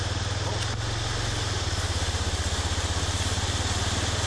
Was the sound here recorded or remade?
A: recorded